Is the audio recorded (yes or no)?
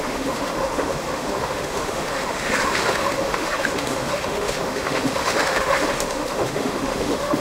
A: no